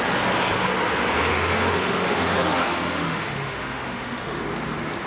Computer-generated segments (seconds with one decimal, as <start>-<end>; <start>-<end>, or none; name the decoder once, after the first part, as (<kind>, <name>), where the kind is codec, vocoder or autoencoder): 1.3-4.4 (autoencoder, DAC-VAE)